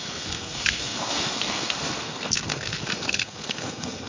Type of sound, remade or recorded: remade